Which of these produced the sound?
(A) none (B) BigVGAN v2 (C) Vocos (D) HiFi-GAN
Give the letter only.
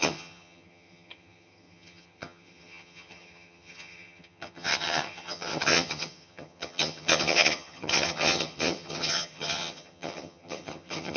D